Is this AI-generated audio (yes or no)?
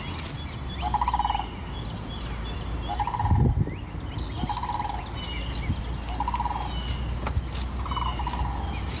no